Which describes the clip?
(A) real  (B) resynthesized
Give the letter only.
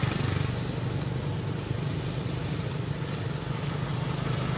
A